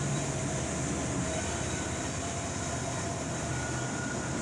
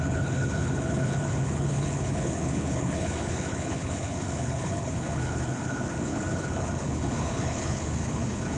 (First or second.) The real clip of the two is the first